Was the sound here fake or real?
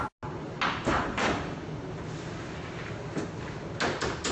real